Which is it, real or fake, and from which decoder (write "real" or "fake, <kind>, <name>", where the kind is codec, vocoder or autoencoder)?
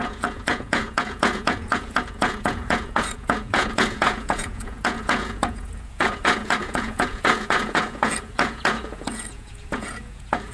fake, vocoder, Vocos